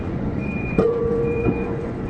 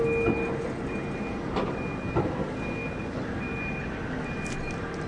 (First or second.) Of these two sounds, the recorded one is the second